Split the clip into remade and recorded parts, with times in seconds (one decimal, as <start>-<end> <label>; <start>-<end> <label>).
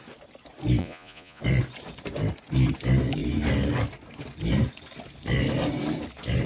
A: 0.0-0.8 recorded; 0.8-1.4 remade; 1.4-6.5 recorded